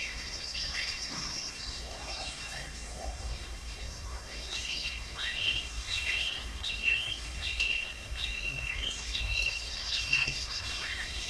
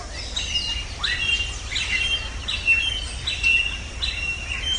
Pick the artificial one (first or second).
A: first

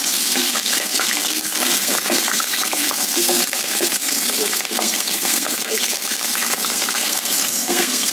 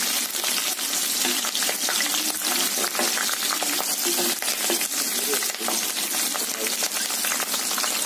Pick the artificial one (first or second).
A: first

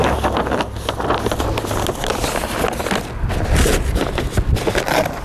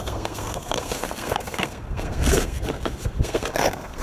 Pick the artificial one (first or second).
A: second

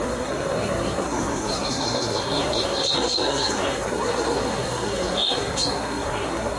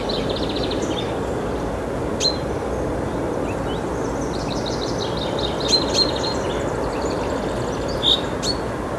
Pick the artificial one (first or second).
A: first